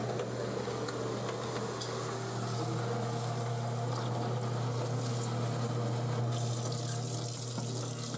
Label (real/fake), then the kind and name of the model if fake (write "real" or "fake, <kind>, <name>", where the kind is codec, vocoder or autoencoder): real